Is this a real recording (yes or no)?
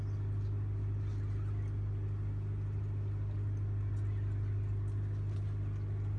yes